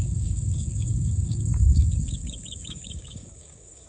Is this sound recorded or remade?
remade